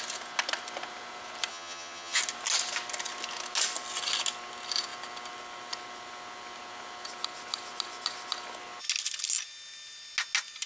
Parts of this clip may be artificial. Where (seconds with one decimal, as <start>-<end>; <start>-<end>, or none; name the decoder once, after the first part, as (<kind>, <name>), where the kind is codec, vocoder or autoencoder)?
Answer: 1.5-2.2 (vocoder, HiFi-GAN)